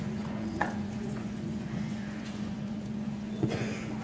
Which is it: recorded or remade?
remade